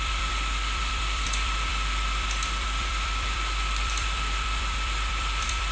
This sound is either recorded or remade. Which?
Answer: remade